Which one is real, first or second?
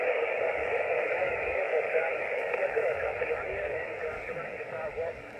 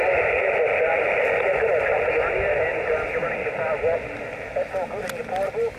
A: second